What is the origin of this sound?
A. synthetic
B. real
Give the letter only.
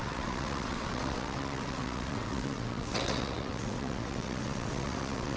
A